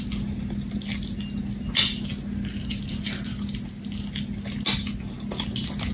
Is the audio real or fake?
real